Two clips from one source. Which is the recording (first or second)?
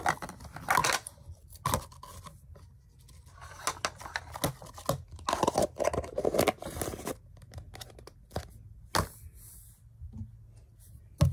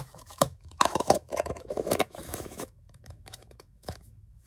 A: first